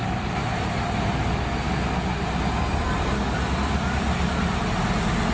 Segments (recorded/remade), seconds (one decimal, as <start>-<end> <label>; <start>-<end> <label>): 0.0-5.3 recorded